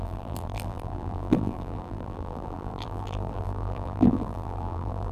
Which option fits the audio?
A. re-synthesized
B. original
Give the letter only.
A